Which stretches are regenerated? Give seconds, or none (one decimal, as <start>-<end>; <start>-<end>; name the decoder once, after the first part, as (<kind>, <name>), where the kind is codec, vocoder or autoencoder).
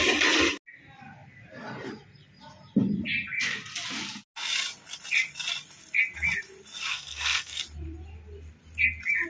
6.9-7.6 (codec, SNAC)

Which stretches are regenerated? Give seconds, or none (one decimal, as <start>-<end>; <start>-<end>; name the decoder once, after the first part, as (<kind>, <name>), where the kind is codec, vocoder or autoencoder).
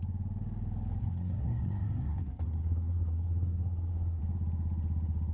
1.0-4.2 (codec, SNAC)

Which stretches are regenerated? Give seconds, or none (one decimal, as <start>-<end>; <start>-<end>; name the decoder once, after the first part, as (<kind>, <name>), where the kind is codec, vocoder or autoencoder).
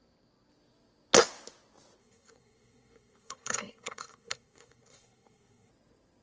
2.0-5.7 (codec, SNAC)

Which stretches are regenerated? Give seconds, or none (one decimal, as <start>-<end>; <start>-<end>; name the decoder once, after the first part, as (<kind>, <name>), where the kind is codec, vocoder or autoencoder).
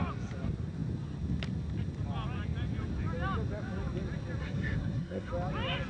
4.4-5.3 (codec, SNAC)